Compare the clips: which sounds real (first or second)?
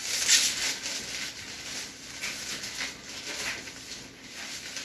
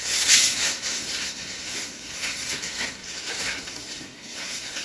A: first